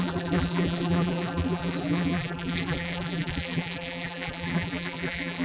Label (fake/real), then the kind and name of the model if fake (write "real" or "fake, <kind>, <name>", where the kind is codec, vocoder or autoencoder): fake, vocoder, BigVGAN v2